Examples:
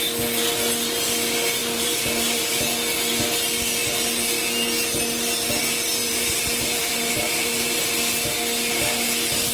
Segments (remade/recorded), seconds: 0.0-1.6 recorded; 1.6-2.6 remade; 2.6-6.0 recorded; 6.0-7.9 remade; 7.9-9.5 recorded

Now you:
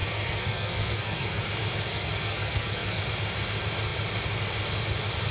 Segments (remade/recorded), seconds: 0.0-1.4 remade; 1.4-1.9 recorded; 1.9-3.0 remade; 3.0-5.3 recorded

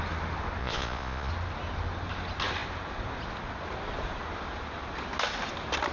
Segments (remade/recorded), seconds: 0.0-0.6 recorded; 0.6-1.3 remade; 1.3-5.9 recorded

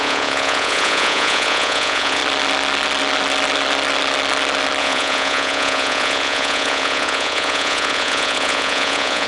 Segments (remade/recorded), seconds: 0.0-2.2 remade; 2.2-4.8 recorded; 4.8-9.3 remade

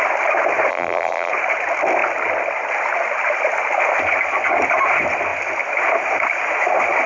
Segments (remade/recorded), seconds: 0.0-0.7 recorded; 0.7-1.3 remade; 1.3-7.1 recorded

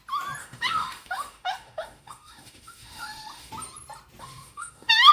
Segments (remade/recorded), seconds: 0.0-0.4 recorded; 0.4-3.5 remade; 3.5-4.2 recorded; 4.2-5.1 remade